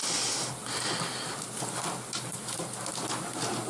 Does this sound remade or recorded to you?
recorded